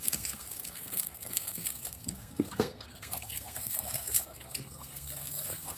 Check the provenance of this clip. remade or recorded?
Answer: remade